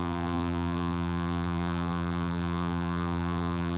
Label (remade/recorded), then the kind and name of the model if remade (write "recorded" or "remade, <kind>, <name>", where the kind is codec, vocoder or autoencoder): remade, vocoder, BigVGAN v2